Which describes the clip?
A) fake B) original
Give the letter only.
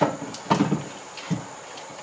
B